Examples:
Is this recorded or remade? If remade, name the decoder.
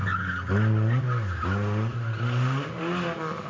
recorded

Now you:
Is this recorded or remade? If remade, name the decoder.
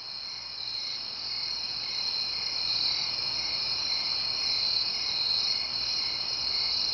recorded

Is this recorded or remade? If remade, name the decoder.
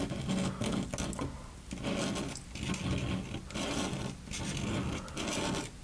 recorded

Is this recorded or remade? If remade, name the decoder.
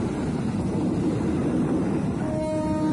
recorded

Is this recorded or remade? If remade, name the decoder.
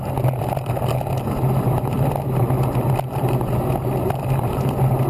recorded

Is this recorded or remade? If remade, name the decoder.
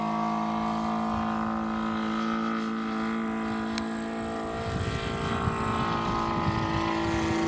recorded